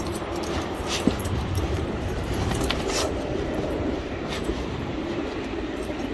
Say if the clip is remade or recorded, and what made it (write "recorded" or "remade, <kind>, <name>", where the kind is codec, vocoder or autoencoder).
remade, vocoder, BigVGAN v2